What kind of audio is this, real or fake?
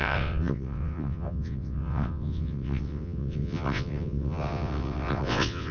fake